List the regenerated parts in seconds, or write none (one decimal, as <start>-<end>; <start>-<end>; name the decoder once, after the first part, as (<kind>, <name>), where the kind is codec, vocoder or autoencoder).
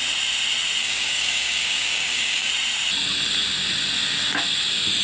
0.8-2.5 (codec, DAC)